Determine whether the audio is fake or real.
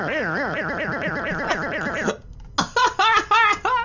real